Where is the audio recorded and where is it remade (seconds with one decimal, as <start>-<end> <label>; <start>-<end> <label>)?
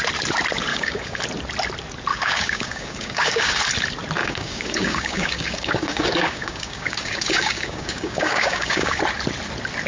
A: 0.0-0.7 recorded; 0.7-1.2 remade; 1.2-2.1 recorded; 2.1-3.6 remade; 3.6-4.2 recorded; 4.2-9.0 remade; 9.0-9.9 recorded